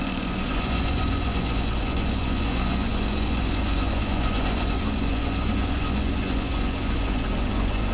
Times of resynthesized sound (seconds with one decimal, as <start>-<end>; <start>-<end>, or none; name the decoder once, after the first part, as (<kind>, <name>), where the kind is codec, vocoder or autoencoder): 0.0-7.9 (vocoder, Vocos)